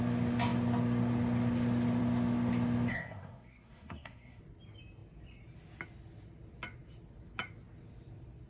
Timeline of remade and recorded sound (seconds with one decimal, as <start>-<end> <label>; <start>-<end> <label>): 0.0-2.9 recorded; 2.9-4.4 remade; 4.4-8.5 recorded